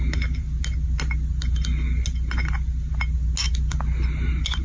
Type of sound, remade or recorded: recorded